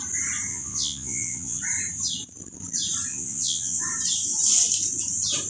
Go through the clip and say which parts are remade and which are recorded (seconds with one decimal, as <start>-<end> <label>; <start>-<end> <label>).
0.0-0.5 recorded; 0.5-1.6 remade; 1.6-3.1 recorded; 3.1-3.8 remade; 3.8-5.5 recorded